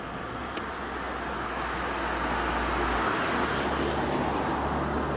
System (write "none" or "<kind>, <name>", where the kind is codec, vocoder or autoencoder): none